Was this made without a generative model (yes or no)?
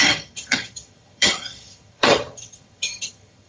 no